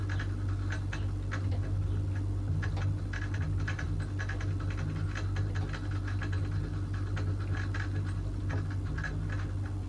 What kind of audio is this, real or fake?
real